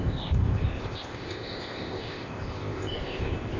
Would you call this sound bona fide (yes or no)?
no